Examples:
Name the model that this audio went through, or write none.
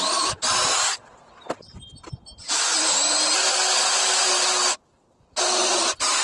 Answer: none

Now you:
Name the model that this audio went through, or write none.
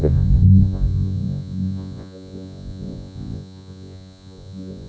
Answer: vocoder, Vocos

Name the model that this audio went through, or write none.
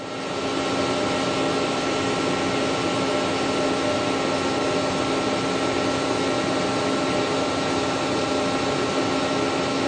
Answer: none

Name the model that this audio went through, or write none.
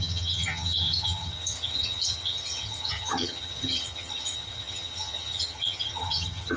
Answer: vocoder, HiFi-GAN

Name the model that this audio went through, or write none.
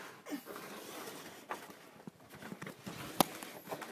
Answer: none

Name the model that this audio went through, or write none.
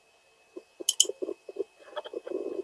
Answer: none